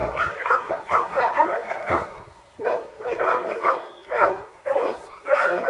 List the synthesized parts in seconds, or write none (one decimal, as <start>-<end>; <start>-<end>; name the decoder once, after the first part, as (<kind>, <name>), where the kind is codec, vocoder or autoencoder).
0.0-5.7 (codec, SNAC)

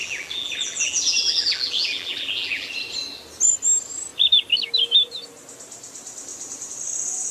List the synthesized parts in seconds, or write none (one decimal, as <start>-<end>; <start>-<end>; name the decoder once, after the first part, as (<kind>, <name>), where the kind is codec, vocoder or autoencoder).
0.0-2.7 (vocoder, BigVGAN v2)

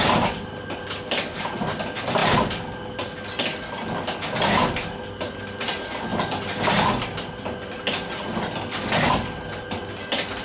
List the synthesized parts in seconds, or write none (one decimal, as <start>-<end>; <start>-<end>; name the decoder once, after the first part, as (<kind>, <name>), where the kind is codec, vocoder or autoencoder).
none

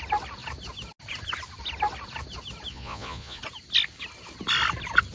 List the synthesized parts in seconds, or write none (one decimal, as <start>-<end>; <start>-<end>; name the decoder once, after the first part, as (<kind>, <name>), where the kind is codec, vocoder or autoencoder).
2.7-3.4 (vocoder, Vocos)

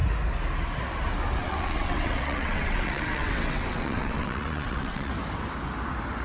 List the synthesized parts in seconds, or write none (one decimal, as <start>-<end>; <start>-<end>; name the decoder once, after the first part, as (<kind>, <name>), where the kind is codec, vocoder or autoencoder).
1.4-5.1 (vocoder, WaveNeXt)

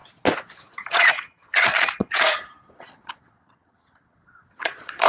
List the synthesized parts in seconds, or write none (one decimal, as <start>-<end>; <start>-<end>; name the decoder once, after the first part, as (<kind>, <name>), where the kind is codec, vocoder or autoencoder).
0.9-5.1 (vocoder, Vocos)